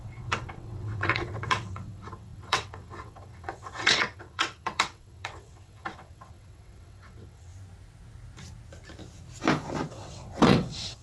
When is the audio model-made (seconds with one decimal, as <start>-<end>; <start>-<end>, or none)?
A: 0.0-7.5; 9.9-11.0